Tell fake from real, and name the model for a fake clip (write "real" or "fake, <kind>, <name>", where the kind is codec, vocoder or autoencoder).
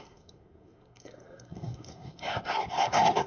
fake, codec, SNAC